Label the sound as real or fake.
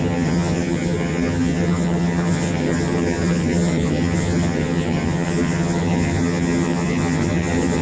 fake